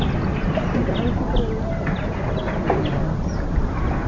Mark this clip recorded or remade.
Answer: recorded